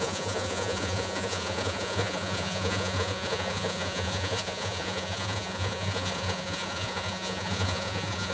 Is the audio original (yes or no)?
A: no